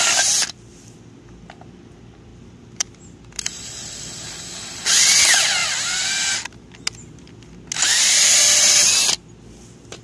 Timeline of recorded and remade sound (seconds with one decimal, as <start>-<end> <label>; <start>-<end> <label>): 0.0-2.3 recorded; 2.3-4.0 remade; 4.0-10.0 recorded